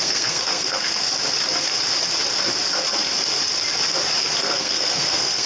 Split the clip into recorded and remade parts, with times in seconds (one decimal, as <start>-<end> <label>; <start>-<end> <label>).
0.0-1.1 remade; 1.1-4.4 recorded; 4.4-5.5 remade